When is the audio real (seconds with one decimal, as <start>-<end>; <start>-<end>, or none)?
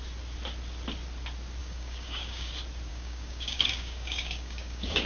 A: 0.0-1.6; 2.5-2.9